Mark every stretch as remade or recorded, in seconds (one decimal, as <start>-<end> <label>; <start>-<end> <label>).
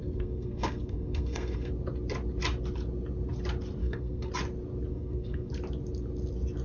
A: 0.0-1.7 remade; 1.7-3.8 recorded; 3.8-4.3 remade; 4.3-4.9 recorded; 4.9-5.5 remade; 5.5-6.6 recorded